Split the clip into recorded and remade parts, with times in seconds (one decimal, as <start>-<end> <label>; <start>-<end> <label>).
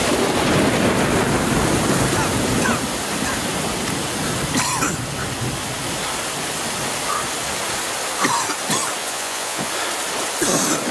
0.0-9.0 recorded; 9.0-9.7 remade; 9.7-10.9 recorded